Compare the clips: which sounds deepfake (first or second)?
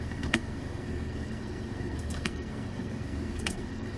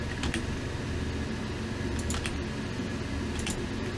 first